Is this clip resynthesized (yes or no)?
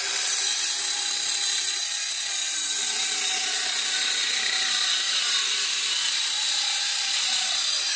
no